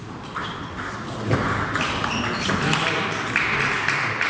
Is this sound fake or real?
real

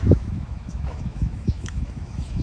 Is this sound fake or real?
fake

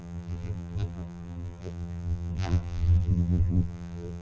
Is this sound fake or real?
fake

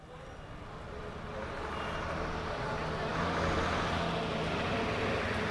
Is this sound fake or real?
real